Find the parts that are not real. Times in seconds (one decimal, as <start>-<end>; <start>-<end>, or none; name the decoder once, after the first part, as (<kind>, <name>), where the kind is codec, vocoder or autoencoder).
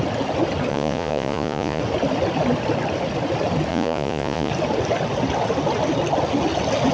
0.7-1.8 (vocoder, Vocos); 3.7-4.5